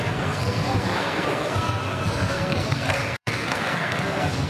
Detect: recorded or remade remade